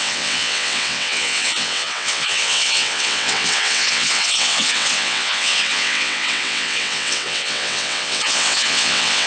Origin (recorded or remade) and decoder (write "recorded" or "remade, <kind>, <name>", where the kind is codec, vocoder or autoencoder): remade, vocoder, WaveNeXt